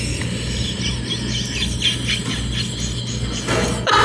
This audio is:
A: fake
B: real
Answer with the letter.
B